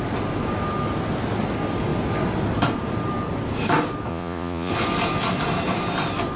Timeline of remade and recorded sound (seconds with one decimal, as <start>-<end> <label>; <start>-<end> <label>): 0.0-4.1 recorded; 4.1-4.7 remade; 4.7-6.4 recorded